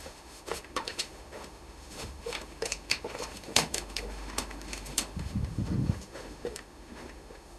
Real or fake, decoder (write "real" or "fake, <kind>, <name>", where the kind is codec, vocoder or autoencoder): fake, autoencoder, DAC-VAE